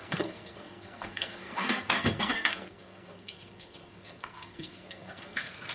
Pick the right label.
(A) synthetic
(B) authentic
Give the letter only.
A